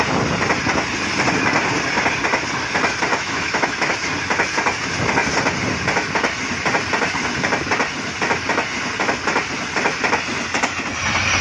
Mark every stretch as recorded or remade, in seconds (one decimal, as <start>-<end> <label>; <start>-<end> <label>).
0.0-3.1 recorded; 3.1-3.9 remade; 3.9-11.4 recorded